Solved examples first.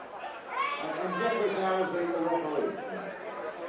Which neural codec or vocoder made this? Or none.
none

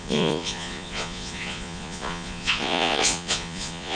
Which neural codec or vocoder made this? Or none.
vocoder, Vocos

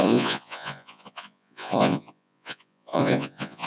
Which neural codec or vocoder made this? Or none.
vocoder, Vocos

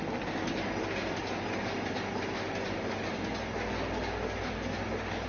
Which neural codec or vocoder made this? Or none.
none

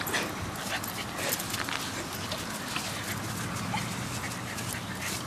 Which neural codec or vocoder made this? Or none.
none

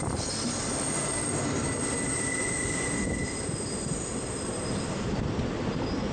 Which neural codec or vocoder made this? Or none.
none